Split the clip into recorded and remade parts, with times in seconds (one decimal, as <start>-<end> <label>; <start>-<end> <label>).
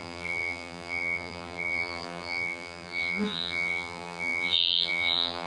0.0-5.5 remade